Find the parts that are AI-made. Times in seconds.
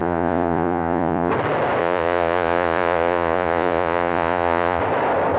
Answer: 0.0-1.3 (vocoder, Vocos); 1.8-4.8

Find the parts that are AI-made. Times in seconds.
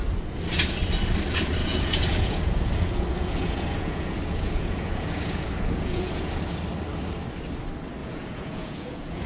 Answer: 1.6-6.4 (vocoder, Vocos); 8.0-9.3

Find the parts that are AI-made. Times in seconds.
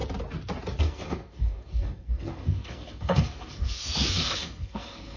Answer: 0.8-5.2 (codec, SNAC)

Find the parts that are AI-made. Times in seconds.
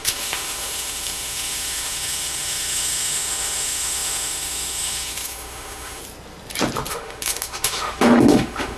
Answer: 0.0-6.0 (autoencoder, DAC-VAE); 6.9-8.8